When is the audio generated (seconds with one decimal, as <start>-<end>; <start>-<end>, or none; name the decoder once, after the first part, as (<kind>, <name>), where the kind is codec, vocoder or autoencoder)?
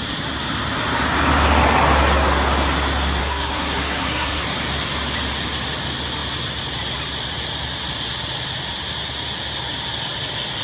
3.2-4.4 (codec, SNAC)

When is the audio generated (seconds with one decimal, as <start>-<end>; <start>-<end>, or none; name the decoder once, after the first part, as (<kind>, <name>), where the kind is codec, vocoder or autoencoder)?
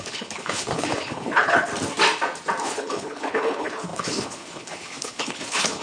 0.0-1.7 (codec, HILCodec); 2.6-5.8